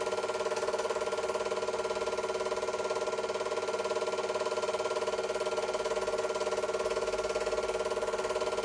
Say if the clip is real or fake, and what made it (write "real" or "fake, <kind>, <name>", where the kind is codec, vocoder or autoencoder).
real